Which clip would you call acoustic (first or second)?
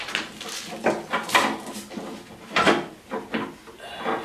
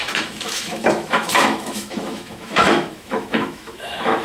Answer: first